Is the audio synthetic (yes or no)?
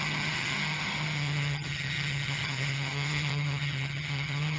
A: yes